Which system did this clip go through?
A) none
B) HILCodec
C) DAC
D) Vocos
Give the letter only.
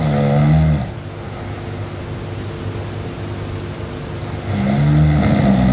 A